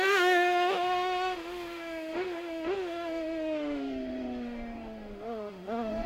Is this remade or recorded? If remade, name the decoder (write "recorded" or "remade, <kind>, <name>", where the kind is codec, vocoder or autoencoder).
remade, autoencoder, DAC-VAE